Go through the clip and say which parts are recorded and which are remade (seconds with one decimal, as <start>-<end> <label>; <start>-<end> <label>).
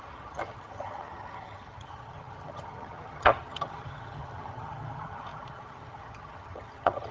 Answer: 0.0-7.1 remade